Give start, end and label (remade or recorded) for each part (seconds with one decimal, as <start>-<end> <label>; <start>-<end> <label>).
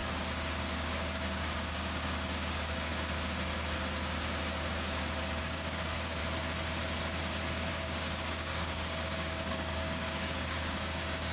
0.0-2.9 remade; 2.9-5.4 recorded; 5.4-6.2 remade; 6.2-7.7 recorded; 7.7-11.3 remade